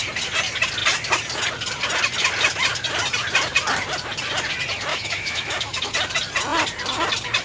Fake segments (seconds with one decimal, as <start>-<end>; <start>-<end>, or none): 4.9-5.9

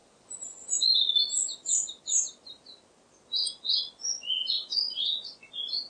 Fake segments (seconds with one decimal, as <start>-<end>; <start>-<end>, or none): 0.0-1.0; 3.4-5.5